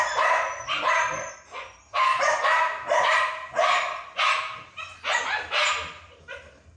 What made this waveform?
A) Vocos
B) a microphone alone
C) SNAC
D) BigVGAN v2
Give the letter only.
B